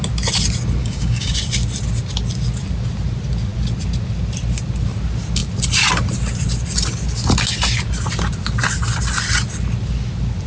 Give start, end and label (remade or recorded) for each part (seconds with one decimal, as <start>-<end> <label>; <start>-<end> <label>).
0.0-0.8 recorded; 0.8-1.3 remade; 1.3-10.5 recorded

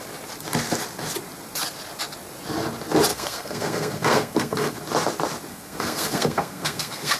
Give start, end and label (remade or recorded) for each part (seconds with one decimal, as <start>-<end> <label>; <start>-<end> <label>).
0.0-3.1 recorded; 3.1-4.8 remade; 4.8-5.5 recorded; 5.5-7.2 remade

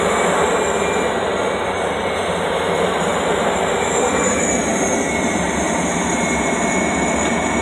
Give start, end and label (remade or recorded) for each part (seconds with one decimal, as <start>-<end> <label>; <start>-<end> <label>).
0.0-7.6 recorded

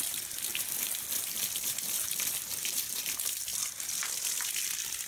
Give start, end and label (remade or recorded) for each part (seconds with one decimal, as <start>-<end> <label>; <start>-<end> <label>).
0.0-3.5 remade; 3.5-4.6 recorded; 4.6-5.1 remade

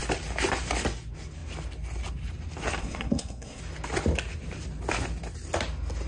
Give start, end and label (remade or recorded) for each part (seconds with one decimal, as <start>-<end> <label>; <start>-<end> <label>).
0.0-2.8 recorded; 2.8-3.6 remade; 3.6-6.1 recorded